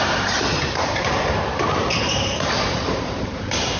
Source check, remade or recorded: remade